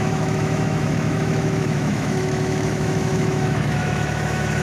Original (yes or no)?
no